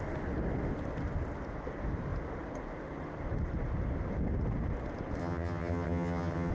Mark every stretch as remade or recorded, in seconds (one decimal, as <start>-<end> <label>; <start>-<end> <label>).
0.0-5.2 recorded; 5.2-6.5 remade